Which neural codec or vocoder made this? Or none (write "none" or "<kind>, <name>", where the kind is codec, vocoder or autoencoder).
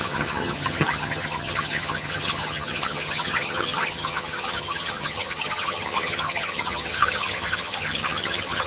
vocoder, HiFi-GAN